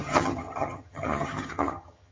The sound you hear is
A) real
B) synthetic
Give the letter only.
B